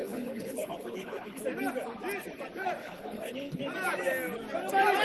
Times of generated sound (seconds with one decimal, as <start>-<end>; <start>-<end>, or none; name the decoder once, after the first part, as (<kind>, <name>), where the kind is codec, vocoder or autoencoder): 0.0-1.4 (codec, HILCodec); 2.8-3.6